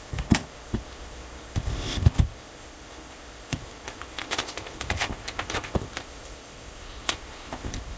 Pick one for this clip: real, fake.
fake